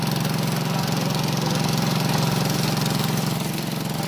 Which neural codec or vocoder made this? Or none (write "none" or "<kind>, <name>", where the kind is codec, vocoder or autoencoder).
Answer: none